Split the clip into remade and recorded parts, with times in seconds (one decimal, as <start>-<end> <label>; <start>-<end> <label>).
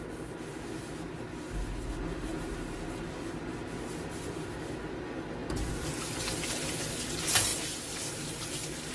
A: 0.0-8.9 recorded